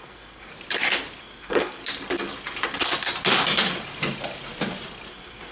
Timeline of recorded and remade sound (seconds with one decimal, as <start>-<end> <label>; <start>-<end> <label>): 0.0-0.5 remade; 0.5-1.2 recorded; 1.2-1.8 remade; 1.8-5.1 recorded; 5.1-5.5 remade